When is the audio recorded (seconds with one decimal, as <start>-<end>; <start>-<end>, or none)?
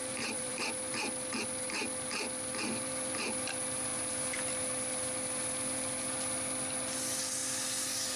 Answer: 0.6-8.2